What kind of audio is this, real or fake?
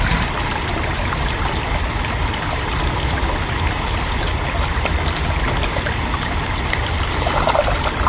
real